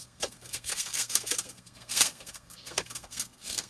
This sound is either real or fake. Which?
fake